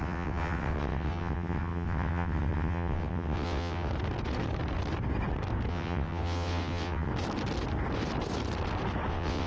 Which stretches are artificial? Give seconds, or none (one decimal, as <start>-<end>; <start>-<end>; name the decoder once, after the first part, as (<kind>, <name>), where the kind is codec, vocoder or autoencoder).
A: 0.0-3.9 (vocoder, WaveNeXt); 5.7-7.1; 9.1-9.5

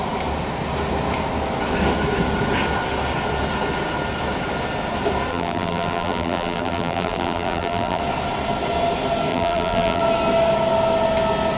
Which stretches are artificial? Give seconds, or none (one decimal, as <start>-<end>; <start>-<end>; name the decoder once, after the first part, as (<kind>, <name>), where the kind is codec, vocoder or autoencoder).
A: 5.3-8.0 (vocoder, BigVGAN v2); 9.3-10.0